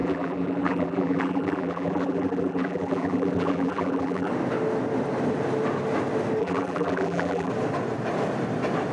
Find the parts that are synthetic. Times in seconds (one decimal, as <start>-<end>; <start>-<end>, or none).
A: 0.0-4.3; 6.4-7.5

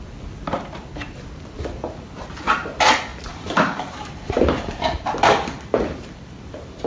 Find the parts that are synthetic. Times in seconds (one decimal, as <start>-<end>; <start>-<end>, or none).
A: 3.1-6.9

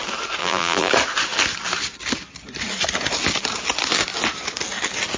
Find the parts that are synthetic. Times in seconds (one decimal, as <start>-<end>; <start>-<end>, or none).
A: 0.4-0.9

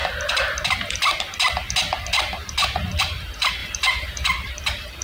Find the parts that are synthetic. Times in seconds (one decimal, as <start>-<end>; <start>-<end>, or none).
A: 3.0-5.0